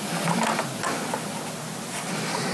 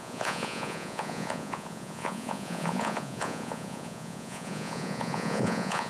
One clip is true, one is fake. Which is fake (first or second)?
second